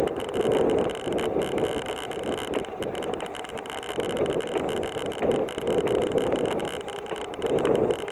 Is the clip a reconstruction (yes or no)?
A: no